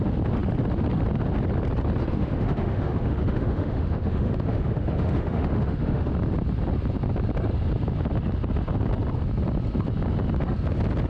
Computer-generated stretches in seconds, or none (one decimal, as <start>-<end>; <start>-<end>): 2.0-6.1